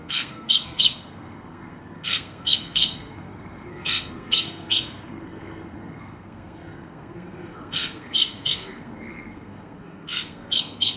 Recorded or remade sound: remade